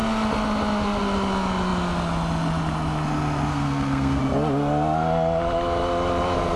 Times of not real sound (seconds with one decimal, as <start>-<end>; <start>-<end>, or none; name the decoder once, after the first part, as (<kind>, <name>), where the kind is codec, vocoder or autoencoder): 3.5-4.2 (codec, SNAC)